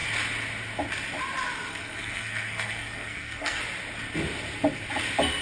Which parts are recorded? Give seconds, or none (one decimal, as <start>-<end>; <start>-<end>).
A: 0.0-1.7; 3.6-5.4